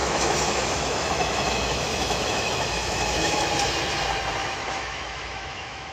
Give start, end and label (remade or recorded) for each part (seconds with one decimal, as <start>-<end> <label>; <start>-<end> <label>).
0.0-3.5 remade; 3.5-4.4 recorded; 4.4-5.9 remade